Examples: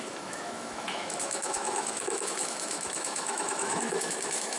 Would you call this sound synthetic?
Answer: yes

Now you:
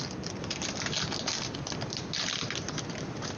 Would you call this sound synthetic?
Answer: no